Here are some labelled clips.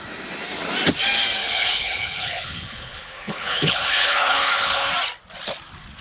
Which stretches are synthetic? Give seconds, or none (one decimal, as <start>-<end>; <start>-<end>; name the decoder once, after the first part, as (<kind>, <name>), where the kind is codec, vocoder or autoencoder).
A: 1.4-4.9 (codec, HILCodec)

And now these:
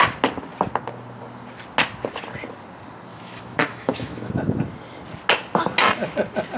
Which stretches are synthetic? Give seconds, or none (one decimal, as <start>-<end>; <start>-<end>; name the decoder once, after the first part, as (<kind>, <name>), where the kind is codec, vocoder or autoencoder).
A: 3.1-4.3 (autoencoder, DAC-VAE)

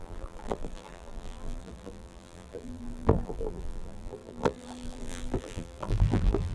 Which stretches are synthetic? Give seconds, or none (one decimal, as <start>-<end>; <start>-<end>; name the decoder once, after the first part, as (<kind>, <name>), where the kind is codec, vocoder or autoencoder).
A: 0.0-6.5 (vocoder, BigVGAN v2)

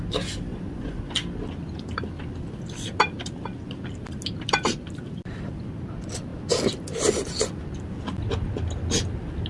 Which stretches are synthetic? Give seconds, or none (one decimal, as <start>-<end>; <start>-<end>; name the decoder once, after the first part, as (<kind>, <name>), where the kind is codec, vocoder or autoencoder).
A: 0.5-1.0 (vocoder, Vocos)